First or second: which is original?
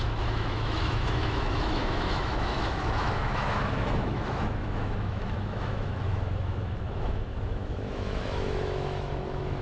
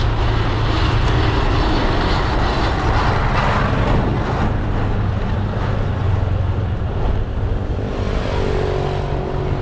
second